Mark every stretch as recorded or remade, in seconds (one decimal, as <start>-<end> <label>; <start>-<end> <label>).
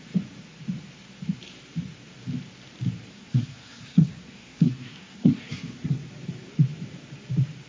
0.0-3.1 recorded; 3.1-6.1 remade; 6.1-7.7 recorded